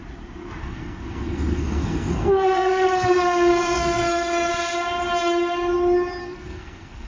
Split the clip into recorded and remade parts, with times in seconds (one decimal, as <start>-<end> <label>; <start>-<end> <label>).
0.0-0.6 recorded; 0.6-4.5 remade; 4.5-6.2 recorded; 6.2-7.1 remade

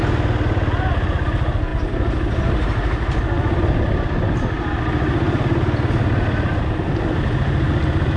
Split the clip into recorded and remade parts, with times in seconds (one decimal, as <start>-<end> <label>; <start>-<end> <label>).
0.0-8.2 recorded

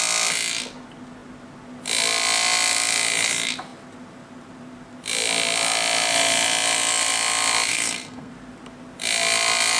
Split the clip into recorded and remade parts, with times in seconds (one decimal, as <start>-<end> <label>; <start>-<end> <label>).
0.0-7.7 recorded; 7.7-8.3 remade; 8.3-9.8 recorded

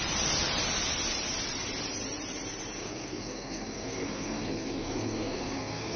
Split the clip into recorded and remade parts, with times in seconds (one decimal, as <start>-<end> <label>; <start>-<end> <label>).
0.0-2.8 recorded; 2.8-6.0 remade